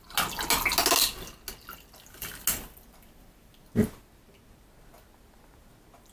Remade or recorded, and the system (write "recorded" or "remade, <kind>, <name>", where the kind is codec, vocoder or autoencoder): recorded